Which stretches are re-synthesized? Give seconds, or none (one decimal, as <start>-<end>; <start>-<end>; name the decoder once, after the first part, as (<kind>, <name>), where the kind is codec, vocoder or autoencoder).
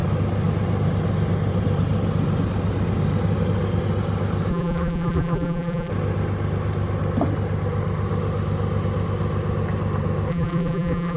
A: 4.5-5.9 (vocoder, BigVGAN v2); 10.3-11.2